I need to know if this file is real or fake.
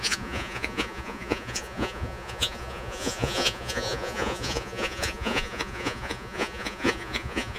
fake